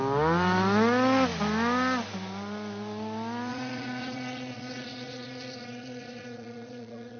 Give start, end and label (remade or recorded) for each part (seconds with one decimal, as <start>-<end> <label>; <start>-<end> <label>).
0.0-3.5 recorded; 3.5-7.2 remade